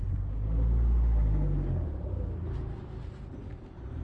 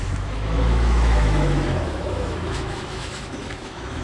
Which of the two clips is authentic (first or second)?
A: first